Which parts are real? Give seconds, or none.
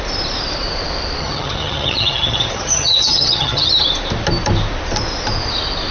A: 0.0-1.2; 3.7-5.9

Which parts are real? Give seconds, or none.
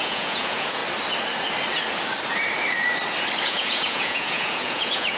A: 0.8-3.4